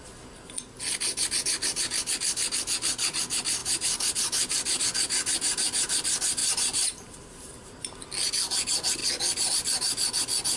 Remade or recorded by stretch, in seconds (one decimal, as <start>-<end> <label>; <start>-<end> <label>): 0.0-3.6 recorded; 3.6-4.8 remade; 4.8-6.4 recorded; 6.4-8.0 remade; 8.0-10.6 recorded